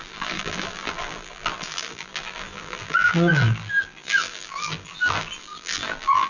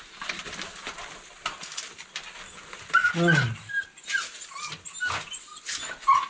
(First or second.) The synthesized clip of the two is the first